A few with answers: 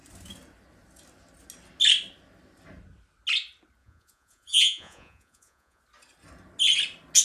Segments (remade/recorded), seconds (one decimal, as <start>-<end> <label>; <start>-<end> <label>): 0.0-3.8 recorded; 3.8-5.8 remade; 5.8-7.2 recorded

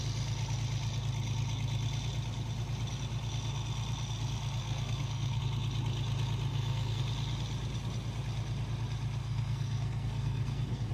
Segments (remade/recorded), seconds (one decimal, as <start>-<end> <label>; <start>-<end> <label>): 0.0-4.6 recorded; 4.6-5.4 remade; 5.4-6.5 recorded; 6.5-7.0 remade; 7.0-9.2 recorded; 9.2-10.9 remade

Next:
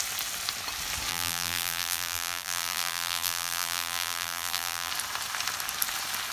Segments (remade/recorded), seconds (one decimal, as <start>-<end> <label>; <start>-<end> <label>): 0.0-1.1 recorded; 1.1-4.9 remade; 4.9-6.3 recorded